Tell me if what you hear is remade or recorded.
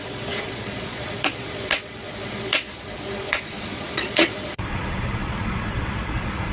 remade